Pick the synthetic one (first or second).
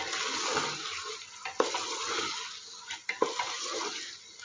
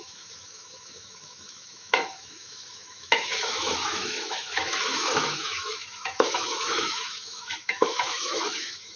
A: second